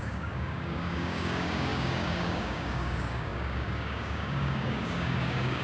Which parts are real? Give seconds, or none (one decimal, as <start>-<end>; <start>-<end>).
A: none